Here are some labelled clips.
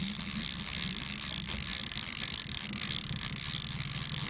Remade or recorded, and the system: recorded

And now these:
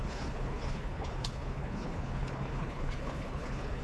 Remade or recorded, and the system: remade, codec, HILCodec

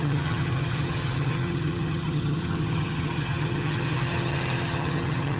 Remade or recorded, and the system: remade, vocoder, HiFi-GAN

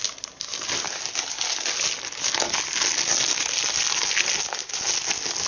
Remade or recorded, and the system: recorded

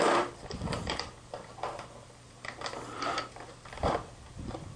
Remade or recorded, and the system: remade, vocoder, BigVGAN v2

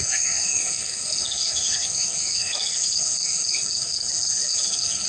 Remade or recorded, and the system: remade, codec, SNAC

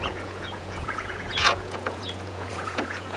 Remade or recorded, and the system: remade, vocoder, Vocos